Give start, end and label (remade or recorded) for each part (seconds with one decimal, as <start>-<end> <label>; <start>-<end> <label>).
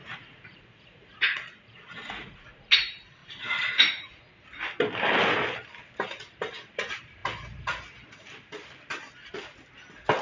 0.0-2.7 remade; 2.7-3.2 recorded; 3.2-4.2 remade; 4.2-10.2 recorded